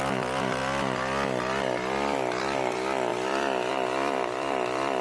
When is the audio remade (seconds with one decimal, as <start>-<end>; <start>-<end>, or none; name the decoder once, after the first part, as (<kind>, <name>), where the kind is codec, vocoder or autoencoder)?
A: 0.0-0.6 (vocoder, BigVGAN v2); 2.4-5.0